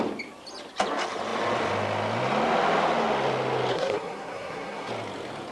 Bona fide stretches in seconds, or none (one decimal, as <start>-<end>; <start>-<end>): 0.0-3.7; 4.9-5.5